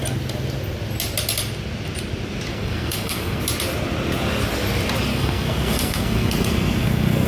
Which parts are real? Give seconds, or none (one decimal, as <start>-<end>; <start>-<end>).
0.0-2.5; 3.4-5.1